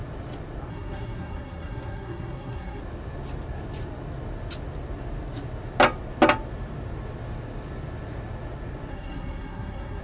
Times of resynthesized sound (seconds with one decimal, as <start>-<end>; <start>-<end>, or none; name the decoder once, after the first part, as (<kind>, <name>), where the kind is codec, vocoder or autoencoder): 0.7-2.8 (codec, SNAC); 8.9-10.0

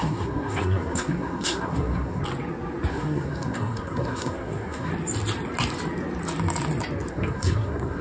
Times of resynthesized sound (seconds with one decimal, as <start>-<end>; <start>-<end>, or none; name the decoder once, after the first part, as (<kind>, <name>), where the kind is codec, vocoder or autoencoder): 0.0-2.2 (codec, SNAC); 2.9-4.9; 7.1-8.0

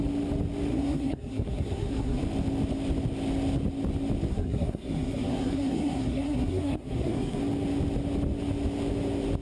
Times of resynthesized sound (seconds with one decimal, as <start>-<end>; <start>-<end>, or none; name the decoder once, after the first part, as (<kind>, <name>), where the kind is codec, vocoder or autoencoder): 0.7-2.2 (codec, SNAC); 4.3-7.4

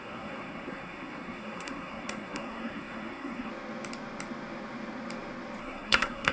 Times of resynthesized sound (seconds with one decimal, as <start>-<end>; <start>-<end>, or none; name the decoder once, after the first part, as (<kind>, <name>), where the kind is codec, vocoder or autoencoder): 0.0-3.5 (codec, SNAC); 5.6-6.3

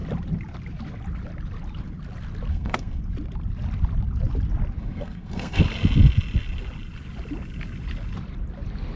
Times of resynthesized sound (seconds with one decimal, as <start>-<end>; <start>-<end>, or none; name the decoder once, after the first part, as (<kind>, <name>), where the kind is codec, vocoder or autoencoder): 2.5-3.0 (codec, SNAC); 4.8-5.6

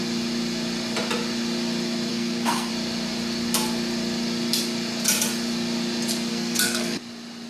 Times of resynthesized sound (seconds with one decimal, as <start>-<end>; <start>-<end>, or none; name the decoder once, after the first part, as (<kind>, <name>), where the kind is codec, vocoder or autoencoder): 2.1-2.7 (codec, SNAC); 6.3-7.0

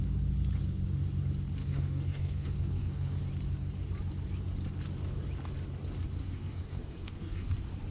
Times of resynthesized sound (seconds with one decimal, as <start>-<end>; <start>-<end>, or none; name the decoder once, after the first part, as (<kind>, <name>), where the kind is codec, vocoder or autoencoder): 1.6-3.2 (codec, SNAC); 6.2-7.5